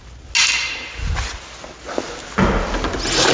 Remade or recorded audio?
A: recorded